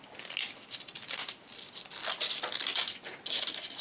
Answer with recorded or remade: recorded